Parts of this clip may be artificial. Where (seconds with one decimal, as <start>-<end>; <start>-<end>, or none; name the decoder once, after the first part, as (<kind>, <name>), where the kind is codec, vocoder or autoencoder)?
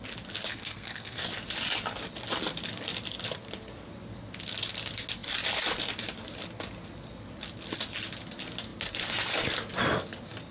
0.5-1.2 (codec, SNAC)